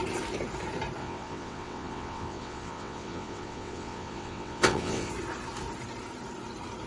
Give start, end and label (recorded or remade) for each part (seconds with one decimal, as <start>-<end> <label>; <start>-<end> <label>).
0.0-1.0 recorded; 1.0-5.1 remade; 5.1-6.9 recorded